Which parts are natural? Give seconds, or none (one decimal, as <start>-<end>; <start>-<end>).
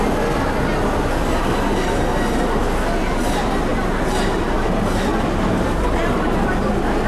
0.0-7.1